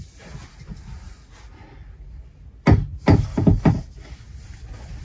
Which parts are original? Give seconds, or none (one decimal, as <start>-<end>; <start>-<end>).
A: 0.0-5.0